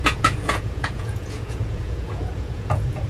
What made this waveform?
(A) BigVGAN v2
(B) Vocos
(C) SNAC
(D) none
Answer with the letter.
B